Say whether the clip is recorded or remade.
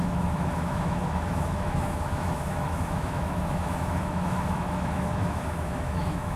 remade